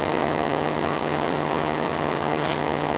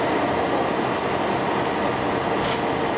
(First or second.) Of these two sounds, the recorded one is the second